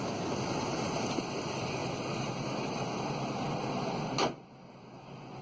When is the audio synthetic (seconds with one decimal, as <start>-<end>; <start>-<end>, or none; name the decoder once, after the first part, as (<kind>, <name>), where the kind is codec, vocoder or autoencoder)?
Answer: none